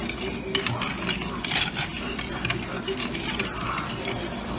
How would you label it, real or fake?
real